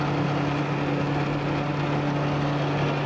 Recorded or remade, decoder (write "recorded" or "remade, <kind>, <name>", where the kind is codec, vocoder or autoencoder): recorded